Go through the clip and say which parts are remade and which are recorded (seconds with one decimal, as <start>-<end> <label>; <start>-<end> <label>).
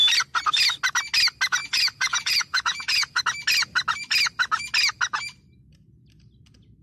0.0-1.6 recorded; 1.6-3.2 remade; 3.2-6.8 recorded